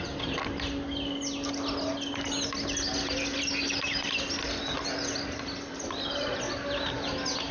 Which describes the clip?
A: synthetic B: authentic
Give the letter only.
B